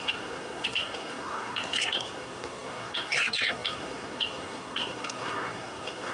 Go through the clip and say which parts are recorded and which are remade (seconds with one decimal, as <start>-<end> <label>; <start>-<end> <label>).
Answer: 0.0-6.1 remade